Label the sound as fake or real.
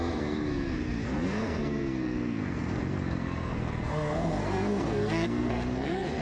fake